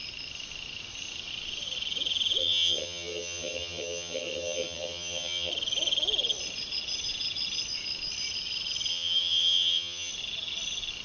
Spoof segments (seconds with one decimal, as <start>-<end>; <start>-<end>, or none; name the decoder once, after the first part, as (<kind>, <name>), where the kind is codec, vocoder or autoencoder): 2.4-5.5 (vocoder, HiFi-GAN); 8.9-10.1